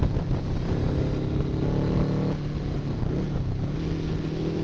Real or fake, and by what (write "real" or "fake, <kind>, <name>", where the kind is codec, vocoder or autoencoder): real